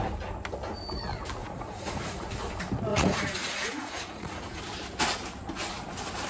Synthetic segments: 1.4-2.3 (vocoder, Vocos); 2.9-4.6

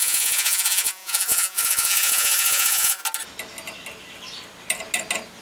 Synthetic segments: 0.0-3.0 (vocoder, Vocos)

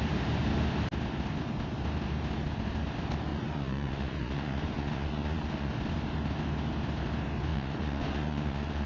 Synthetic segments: 3.3-5.7 (vocoder, Vocos); 7.5-8.9

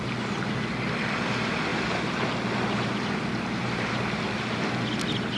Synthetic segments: none

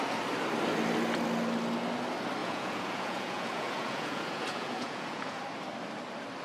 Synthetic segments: 2.4-5.4 (vocoder, Vocos)